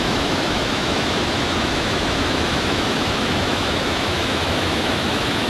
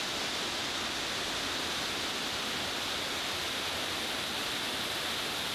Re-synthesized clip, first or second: first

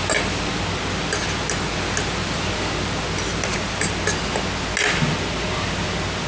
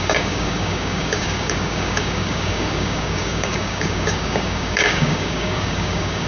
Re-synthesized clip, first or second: second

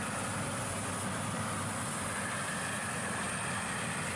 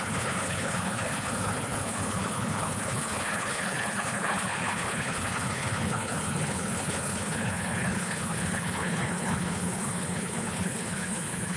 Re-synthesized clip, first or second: second